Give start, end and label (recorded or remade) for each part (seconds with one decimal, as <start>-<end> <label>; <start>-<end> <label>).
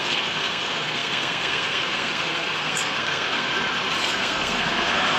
0.0-3.5 remade; 3.5-4.0 recorded; 4.0-5.2 remade